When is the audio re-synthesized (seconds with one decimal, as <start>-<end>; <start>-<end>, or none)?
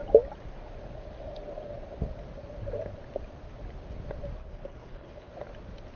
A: 4.4-5.3